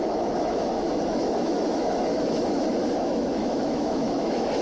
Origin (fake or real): fake